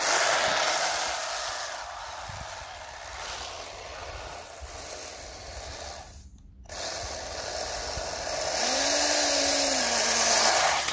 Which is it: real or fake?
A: real